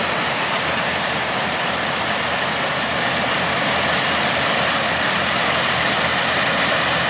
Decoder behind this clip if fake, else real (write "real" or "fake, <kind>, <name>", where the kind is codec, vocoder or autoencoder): real